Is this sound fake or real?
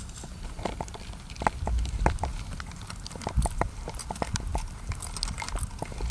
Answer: real